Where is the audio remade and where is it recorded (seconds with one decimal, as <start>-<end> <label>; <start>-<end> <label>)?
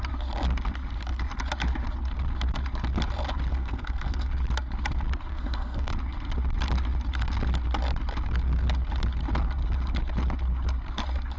0.0-3.5 recorded; 3.5-4.3 remade; 4.3-5.3 recorded; 5.3-5.9 remade; 5.9-11.4 recorded